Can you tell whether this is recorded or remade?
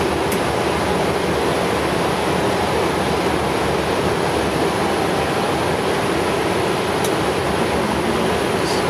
recorded